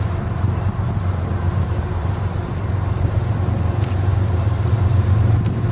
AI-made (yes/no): yes